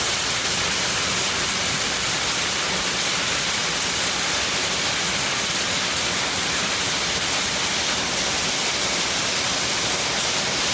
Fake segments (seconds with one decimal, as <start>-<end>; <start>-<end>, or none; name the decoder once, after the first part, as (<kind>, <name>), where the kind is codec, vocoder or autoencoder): none